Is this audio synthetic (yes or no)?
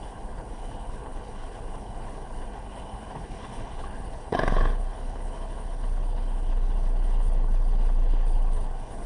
yes